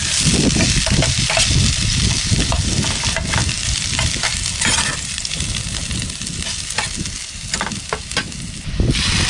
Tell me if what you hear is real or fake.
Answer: real